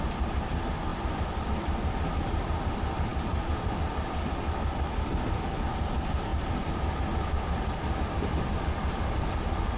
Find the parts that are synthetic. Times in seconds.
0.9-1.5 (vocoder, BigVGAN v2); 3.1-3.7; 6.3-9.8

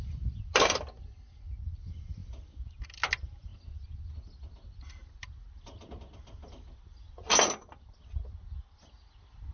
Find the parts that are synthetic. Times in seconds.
none

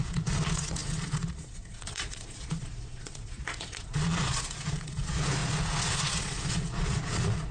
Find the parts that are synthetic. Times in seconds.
0.0-7.5 (vocoder, Vocos)

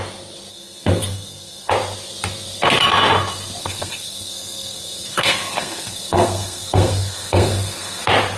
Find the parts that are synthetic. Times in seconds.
0.5-1.7 (codec, SNAC); 3.6-8.0

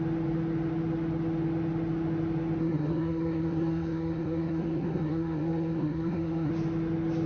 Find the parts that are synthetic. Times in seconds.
2.6-6.5 (codec, SNAC)

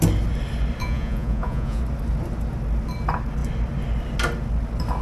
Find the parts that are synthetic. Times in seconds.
0.8-1.8 (vocoder, Vocos)

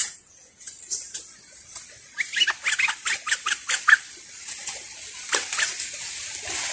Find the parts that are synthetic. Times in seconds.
0.0-0.7 (vocoder, Vocos)

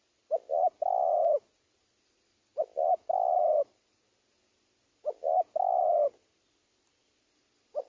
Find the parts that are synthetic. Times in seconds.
none